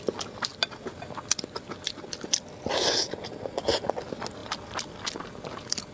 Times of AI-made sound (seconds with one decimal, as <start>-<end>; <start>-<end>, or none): none